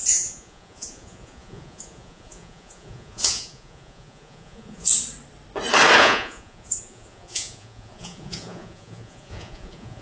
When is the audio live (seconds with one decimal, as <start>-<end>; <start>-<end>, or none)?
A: 4.9-6.0